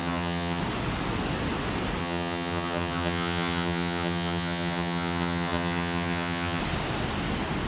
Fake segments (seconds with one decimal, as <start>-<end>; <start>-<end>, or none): 0.0-0.6; 2.0-6.6

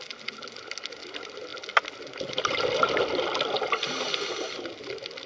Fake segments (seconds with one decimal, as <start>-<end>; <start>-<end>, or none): none

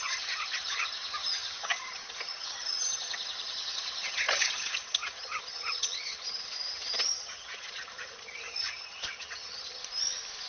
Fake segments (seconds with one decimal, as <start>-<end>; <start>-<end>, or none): 0.0-9.8

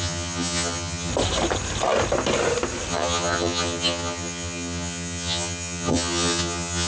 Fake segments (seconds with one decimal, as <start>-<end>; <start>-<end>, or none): 0.0-1.1; 2.9-6.9